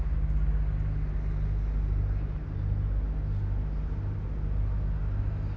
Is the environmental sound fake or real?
real